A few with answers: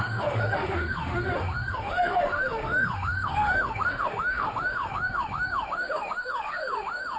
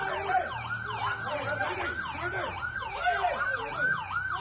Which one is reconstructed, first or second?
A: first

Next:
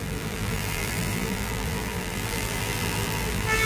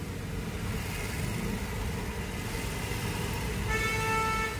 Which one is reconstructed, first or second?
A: first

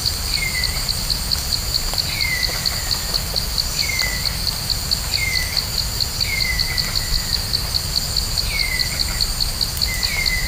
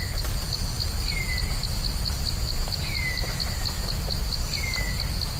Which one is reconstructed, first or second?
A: first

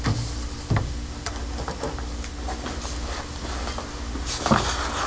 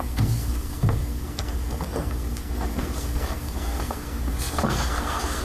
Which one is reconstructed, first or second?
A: second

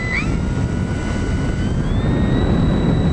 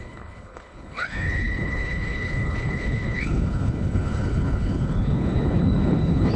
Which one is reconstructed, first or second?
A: second